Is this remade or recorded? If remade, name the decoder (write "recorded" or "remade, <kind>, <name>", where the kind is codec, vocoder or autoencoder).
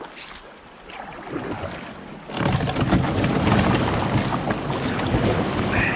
recorded